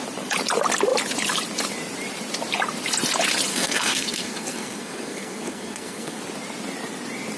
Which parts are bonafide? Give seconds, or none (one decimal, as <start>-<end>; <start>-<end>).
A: 0.0-3.5; 6.2-7.4